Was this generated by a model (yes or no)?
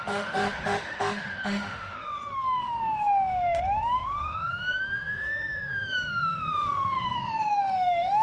yes